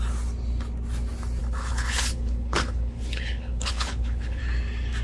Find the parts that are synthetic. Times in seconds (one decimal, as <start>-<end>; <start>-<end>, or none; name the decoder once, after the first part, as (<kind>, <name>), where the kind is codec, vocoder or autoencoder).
1.4-4.4 (codec, HILCodec)